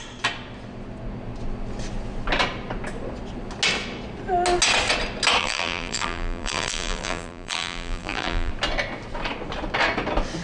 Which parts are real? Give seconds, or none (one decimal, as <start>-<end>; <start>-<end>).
0.0-5.4; 8.5-10.4